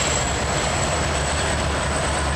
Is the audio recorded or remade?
recorded